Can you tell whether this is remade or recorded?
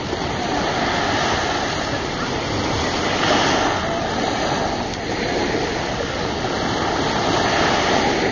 recorded